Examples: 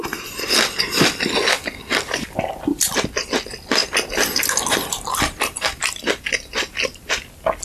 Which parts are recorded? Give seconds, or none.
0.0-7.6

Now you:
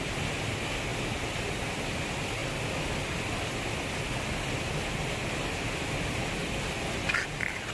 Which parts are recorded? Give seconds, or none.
0.0-7.7

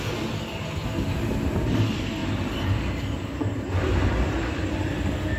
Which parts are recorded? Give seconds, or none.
0.0-5.4

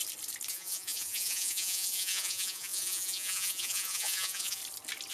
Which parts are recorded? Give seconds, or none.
0.0-0.5; 4.6-5.1

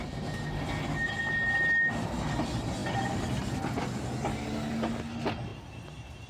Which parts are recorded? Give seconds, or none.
0.0-6.3

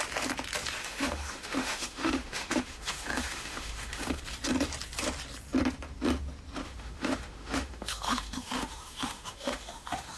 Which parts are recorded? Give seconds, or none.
0.0-0.8; 4.2-6.6